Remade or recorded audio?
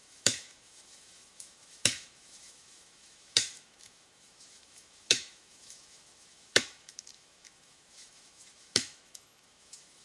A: remade